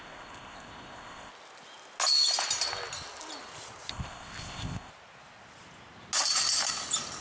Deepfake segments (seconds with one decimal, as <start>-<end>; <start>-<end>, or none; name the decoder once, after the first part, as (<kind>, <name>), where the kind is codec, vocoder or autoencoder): 0.0-1.3 (codec, ZipCodec); 3.9-4.9